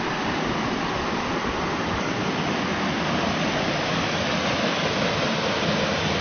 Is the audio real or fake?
real